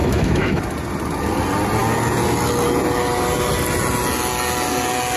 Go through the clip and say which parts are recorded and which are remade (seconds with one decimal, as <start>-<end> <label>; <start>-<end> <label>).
0.0-0.6 remade; 0.6-5.2 recorded